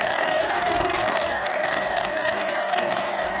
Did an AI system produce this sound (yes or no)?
yes